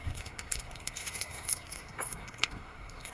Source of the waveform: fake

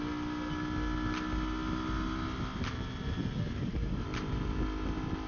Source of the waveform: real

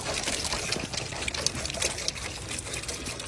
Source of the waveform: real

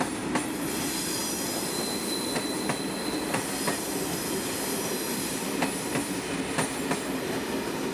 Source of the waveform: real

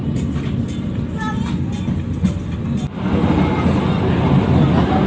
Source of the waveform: real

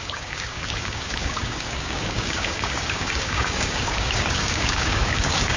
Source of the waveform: fake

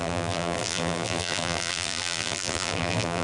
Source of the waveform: fake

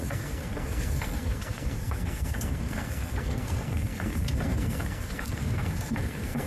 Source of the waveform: fake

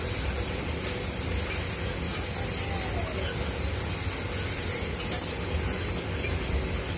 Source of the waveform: real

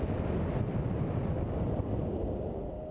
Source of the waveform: real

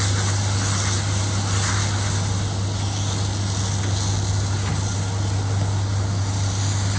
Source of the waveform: real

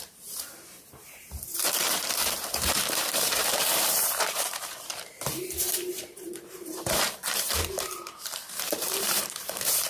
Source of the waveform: fake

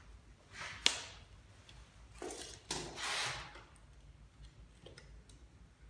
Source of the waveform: real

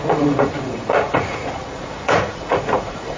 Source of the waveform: fake